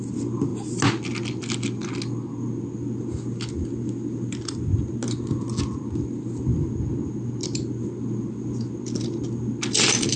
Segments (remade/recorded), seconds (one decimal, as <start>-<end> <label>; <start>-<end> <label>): 0.0-10.2 recorded